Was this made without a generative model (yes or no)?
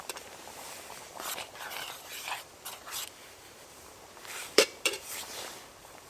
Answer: no